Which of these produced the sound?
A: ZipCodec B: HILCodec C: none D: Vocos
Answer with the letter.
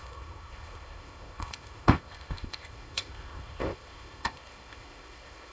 A